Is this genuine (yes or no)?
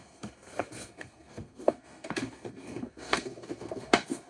no